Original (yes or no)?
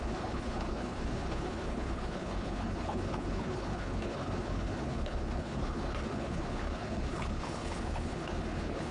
no